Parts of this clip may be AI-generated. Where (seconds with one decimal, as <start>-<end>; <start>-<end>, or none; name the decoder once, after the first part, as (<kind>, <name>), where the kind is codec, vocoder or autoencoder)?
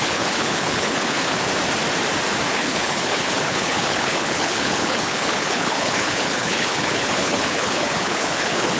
0.0-1.5 (codec, HILCodec); 2.5-8.8